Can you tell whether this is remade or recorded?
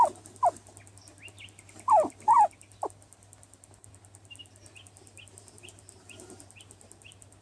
remade